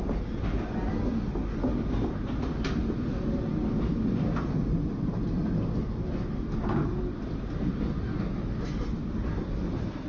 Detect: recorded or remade recorded